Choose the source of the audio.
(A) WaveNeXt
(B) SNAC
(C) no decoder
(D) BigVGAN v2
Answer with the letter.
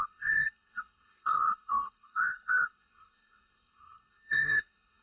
B